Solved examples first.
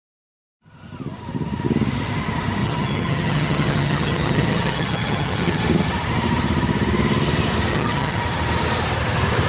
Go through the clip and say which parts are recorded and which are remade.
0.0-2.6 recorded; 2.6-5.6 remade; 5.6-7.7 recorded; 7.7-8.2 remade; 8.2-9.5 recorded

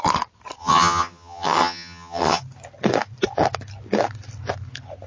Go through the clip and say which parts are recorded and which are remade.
0.0-0.6 recorded; 0.6-2.4 remade; 2.4-5.1 recorded

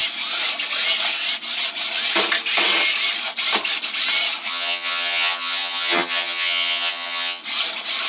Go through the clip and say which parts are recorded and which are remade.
0.0-4.5 recorded; 4.5-7.4 remade; 7.4-8.1 recorded

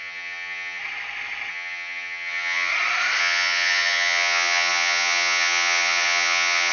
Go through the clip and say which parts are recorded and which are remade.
0.0-0.8 remade; 0.8-1.5 recorded; 1.5-2.7 remade; 2.7-3.2 recorded; 3.2-6.7 remade